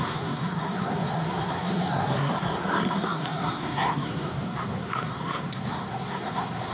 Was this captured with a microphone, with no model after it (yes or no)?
no